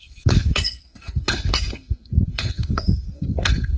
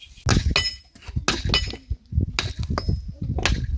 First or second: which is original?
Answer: second